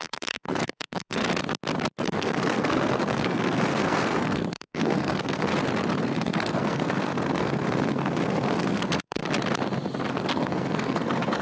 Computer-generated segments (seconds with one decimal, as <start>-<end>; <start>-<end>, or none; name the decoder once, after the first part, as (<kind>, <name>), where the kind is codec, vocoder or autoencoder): 0.0-1.2 (codec, SNAC); 2.0-5.5; 6.0-9.2; 10.1-11.4